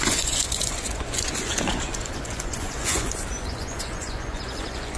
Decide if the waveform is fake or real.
fake